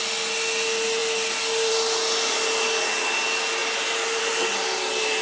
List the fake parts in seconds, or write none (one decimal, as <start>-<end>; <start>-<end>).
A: none

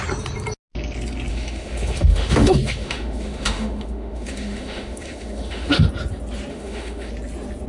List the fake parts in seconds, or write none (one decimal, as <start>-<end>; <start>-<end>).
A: 1.3-5.9; 6.5-7.1

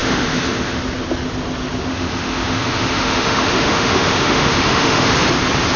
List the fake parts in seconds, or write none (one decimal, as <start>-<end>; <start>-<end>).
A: 0.0-0.8; 1.9-5.1

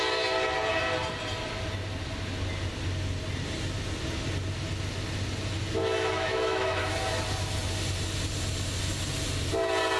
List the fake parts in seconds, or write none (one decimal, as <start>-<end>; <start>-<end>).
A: 5.8-6.9

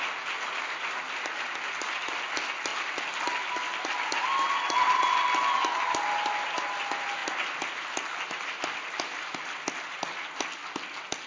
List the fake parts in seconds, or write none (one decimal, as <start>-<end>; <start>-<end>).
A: none